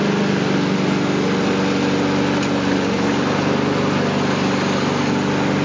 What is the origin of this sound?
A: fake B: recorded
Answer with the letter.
B